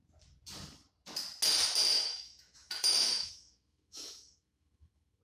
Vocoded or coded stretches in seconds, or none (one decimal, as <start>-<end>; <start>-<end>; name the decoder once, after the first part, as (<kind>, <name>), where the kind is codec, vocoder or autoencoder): 1.9-5.2 (autoencoder, DAC-VAE)

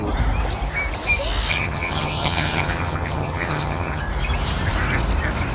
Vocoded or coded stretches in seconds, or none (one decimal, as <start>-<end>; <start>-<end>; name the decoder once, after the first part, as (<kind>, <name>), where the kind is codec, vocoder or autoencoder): 1.5-4.0 (vocoder, HiFi-GAN)